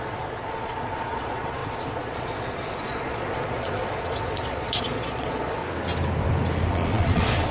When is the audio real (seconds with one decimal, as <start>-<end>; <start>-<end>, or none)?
5.6-6.7